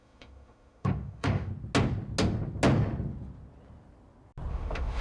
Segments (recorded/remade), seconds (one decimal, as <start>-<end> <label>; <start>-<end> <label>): 0.0-1.5 remade; 1.5-4.5 recorded; 4.5-5.0 remade